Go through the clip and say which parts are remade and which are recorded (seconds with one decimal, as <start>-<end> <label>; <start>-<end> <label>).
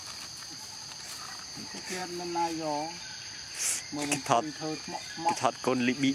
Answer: 0.0-6.1 recorded